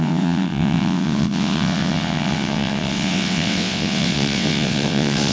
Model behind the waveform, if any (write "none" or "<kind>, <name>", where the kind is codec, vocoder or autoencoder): vocoder, WaveNeXt